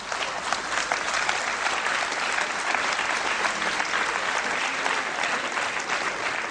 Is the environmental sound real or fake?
real